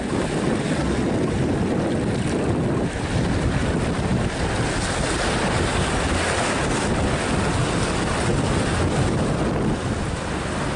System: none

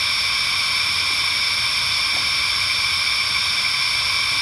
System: none